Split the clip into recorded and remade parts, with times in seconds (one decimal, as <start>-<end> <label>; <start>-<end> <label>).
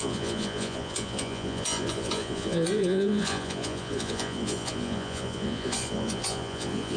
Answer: 0.0-7.0 remade